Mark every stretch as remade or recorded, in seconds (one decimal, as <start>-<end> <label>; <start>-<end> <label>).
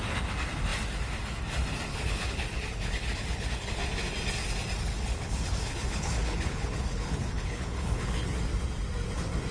0.0-1.9 recorded; 1.9-3.8 remade; 3.8-4.9 recorded; 4.9-8.3 remade; 8.3-9.5 recorded